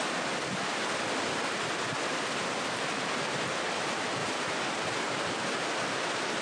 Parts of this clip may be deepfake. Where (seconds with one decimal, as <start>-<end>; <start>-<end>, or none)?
4.2-4.8